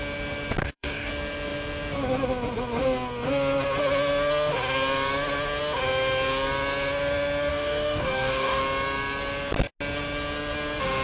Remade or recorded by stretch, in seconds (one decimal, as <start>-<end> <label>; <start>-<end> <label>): 0.0-0.6 recorded; 0.6-1.1 remade; 1.1-7.5 recorded; 7.5-8.6 remade; 8.6-11.0 recorded